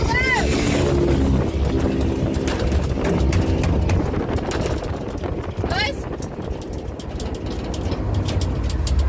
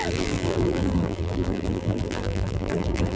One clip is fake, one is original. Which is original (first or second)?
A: first